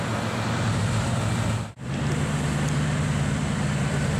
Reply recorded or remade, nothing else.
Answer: remade